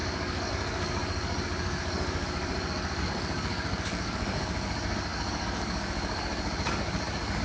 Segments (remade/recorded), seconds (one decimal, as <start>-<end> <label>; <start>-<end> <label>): 0.0-7.4 remade